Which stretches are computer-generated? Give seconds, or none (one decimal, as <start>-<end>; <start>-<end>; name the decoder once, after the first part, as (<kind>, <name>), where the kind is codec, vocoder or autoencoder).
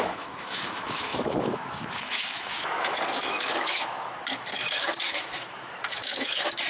0.0-6.7 (autoencoder, DAC-VAE)